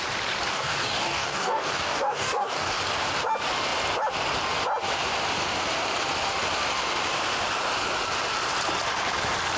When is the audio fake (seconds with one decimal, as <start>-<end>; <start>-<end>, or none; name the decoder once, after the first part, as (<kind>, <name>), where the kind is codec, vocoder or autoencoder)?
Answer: 0.5-2.8 (codec, DAC)